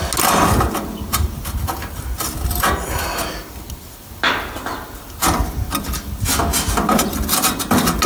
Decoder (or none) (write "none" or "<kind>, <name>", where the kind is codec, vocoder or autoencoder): none